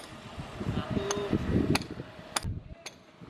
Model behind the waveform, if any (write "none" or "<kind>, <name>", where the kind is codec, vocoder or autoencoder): none